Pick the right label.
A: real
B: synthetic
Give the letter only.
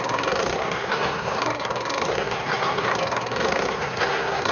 B